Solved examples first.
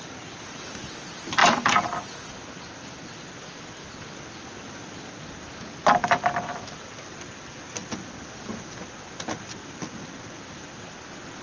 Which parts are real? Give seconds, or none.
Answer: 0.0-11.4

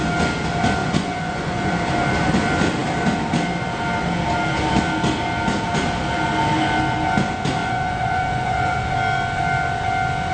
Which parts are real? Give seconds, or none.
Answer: 0.0-0.8; 1.7-7.6; 8.8-10.3

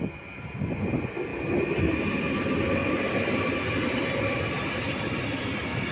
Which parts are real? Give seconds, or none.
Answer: 0.0-5.9

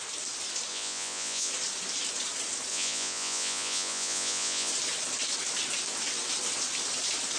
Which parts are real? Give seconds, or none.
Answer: 0.0-0.7; 1.5-2.7; 4.7-7.4

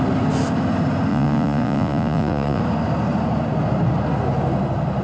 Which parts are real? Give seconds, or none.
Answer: 0.0-1.1; 2.6-5.0